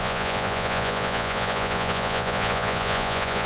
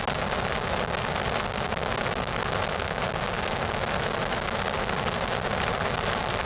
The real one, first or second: second